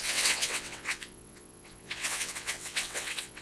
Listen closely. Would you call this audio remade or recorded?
remade